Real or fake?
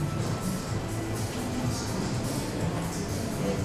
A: real